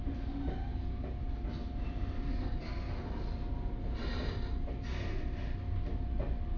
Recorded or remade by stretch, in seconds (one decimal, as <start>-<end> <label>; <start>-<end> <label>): 0.0-6.6 recorded